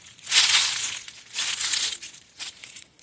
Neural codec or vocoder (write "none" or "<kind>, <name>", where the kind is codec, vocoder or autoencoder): vocoder, Vocos